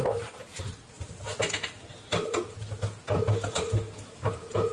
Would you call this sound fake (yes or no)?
no